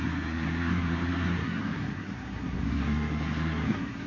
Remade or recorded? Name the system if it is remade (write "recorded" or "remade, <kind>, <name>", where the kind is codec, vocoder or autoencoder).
remade, codec, SNAC